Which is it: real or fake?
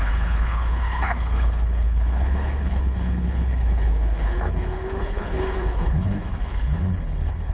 fake